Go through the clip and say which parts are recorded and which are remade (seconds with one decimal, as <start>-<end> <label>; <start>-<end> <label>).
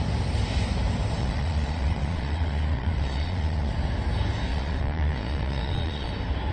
0.0-1.2 recorded; 1.2-3.7 remade; 3.7-4.5 recorded; 4.5-6.1 remade; 6.1-6.5 recorded